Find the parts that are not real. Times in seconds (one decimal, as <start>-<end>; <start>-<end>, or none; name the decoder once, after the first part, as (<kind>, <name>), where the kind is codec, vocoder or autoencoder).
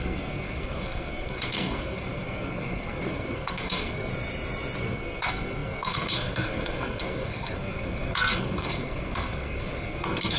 0.0-4.1 (codec, SNAC); 4.8-10.4